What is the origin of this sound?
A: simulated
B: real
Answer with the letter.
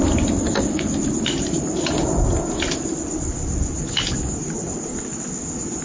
B